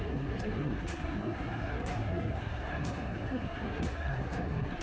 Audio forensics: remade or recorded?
remade